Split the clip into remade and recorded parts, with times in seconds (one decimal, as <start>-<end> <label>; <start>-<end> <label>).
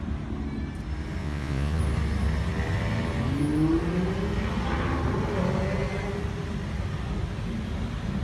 0.0-1.2 recorded; 1.2-1.8 remade; 1.8-8.2 recorded